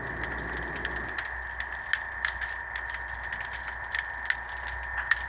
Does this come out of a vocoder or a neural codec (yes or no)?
no